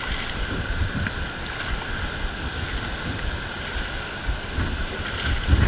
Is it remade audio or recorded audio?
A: recorded